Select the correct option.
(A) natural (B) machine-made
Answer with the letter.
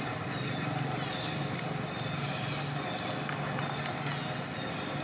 A